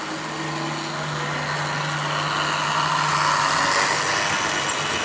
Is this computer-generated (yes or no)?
no